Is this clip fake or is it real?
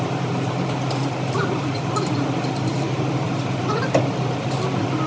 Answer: fake